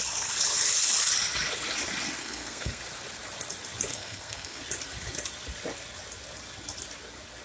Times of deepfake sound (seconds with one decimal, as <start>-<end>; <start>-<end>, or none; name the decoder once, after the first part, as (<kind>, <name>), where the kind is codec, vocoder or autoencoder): 2.2-2.8 (codec, SNAC); 3.9-4.6